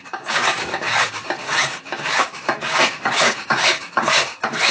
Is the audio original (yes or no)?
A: no